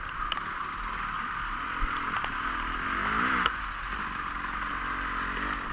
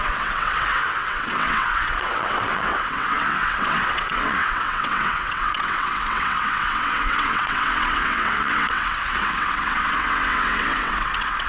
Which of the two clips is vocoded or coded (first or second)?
second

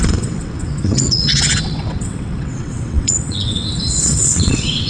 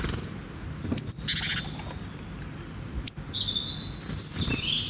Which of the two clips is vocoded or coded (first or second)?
first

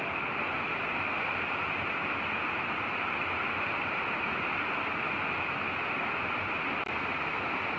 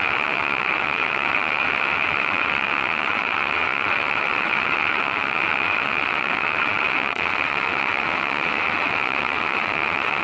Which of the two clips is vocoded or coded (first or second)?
second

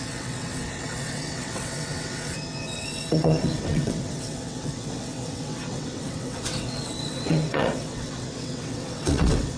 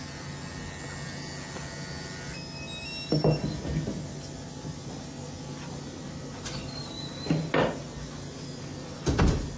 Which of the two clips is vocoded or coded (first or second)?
first